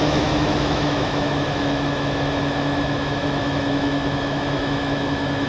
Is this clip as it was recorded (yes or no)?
no